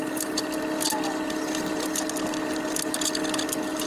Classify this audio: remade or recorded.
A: recorded